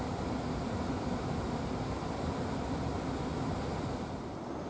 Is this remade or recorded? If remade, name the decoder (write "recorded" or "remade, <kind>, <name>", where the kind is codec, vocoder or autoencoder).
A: recorded